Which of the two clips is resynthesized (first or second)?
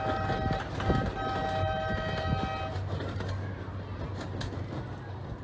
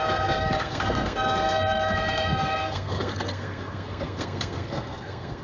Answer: second